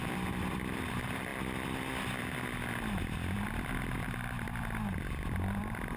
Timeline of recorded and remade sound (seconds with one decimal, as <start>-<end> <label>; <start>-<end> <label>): 0.0-6.0 remade